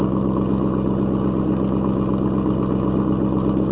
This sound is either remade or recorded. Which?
recorded